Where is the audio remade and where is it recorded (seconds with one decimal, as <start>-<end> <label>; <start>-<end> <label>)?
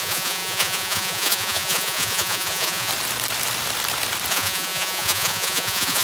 0.0-2.9 remade; 2.9-4.3 recorded; 4.3-6.0 remade